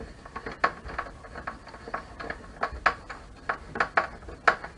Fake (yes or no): no